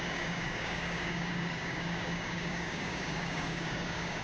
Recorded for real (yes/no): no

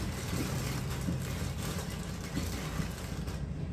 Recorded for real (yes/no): yes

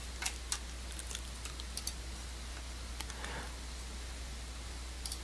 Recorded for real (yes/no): yes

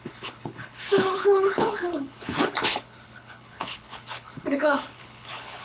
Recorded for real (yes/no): no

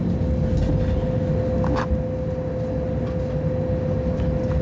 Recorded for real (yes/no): yes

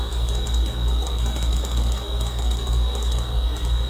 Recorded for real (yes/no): no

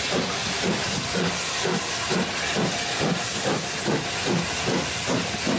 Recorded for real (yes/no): yes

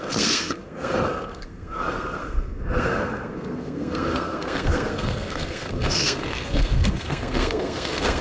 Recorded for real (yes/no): no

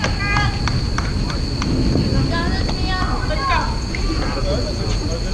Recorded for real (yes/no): yes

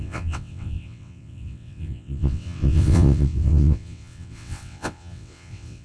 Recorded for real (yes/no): no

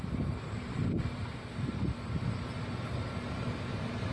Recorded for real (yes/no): yes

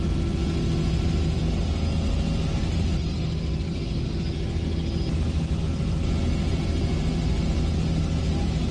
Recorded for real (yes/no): yes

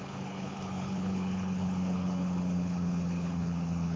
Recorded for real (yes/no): no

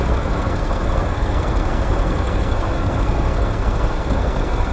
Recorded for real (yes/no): no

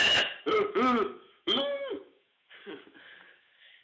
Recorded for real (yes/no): no